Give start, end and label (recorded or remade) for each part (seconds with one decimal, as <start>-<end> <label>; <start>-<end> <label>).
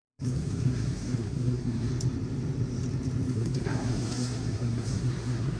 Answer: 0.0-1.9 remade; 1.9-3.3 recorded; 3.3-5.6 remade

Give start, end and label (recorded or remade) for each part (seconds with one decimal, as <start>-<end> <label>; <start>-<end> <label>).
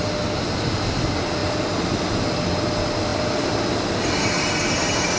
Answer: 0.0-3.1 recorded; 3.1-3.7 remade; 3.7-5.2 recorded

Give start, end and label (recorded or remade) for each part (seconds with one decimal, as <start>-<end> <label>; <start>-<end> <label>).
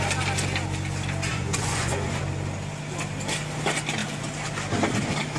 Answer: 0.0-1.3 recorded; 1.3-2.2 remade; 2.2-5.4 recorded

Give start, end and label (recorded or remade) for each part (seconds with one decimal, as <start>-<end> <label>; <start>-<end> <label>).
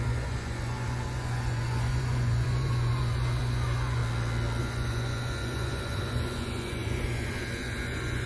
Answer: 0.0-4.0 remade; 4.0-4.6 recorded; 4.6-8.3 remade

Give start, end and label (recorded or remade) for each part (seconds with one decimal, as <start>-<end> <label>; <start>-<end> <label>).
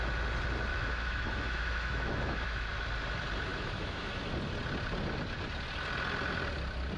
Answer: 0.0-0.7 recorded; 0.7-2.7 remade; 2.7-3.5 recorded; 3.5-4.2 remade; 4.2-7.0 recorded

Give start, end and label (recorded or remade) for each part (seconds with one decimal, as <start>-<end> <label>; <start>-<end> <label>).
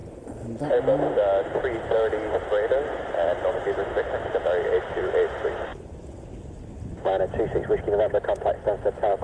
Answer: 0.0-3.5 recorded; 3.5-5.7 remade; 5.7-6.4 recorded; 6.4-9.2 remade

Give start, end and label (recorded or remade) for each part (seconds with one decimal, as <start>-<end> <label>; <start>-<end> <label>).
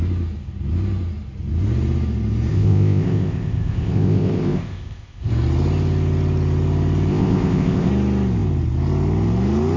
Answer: 0.0-2.5 recorded; 2.5-5.3 remade; 5.3-7.1 recorded; 7.1-7.9 remade; 7.9-9.8 recorded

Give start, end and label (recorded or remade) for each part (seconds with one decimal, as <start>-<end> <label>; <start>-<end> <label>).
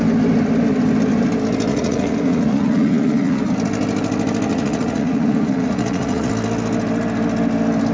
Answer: 0.0-1.7 recorded; 1.7-3.4 remade; 3.4-4.5 recorded; 4.5-6.3 remade; 6.3-7.9 recorded